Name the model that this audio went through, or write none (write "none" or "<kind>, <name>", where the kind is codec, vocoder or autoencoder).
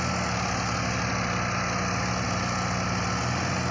none